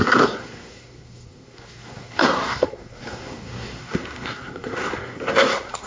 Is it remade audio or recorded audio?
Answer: remade